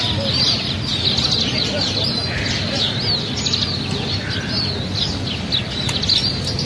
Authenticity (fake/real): real